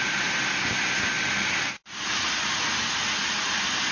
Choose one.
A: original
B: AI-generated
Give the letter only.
A